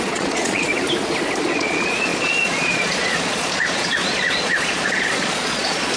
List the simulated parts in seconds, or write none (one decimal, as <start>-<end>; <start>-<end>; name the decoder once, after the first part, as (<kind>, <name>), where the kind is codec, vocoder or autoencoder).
0.0-0.7 (vocoder, Vocos); 1.4-6.0